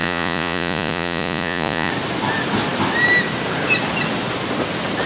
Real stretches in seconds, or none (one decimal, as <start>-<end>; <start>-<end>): 1.9-5.1